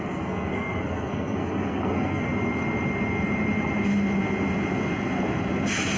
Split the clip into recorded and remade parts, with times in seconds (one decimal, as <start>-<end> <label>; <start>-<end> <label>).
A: 0.0-2.3 remade; 2.3-6.0 recorded